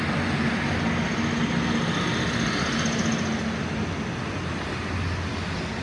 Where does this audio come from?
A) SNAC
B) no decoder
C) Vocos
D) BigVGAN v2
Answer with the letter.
B